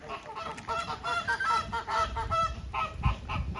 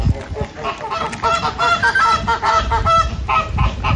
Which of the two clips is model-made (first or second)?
first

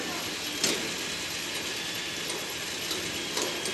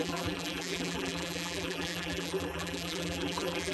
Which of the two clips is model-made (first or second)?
second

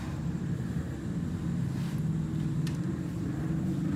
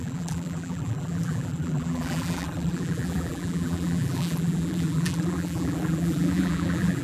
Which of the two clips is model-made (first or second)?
second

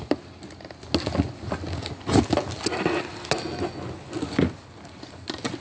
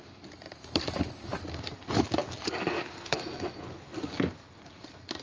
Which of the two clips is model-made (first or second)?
second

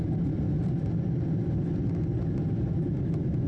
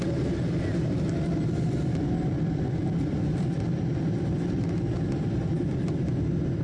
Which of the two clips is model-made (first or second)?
second